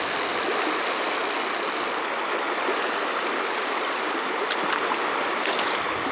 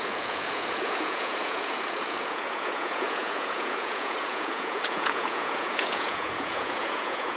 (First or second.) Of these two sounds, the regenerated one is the second